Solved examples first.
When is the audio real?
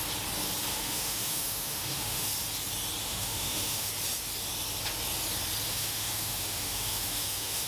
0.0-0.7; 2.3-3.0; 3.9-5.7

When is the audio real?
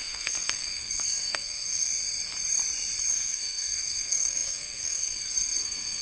1.9-3.1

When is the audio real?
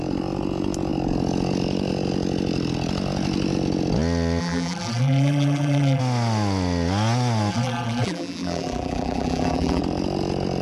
0.0-4.4; 6.0-7.5; 9.8-10.6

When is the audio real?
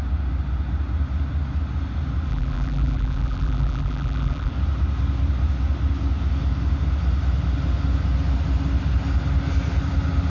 0.0-2.3; 4.5-10.3